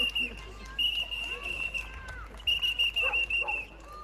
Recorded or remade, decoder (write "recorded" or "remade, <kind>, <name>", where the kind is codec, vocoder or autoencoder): recorded